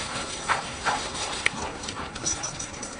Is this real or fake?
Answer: fake